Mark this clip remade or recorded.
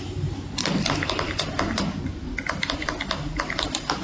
recorded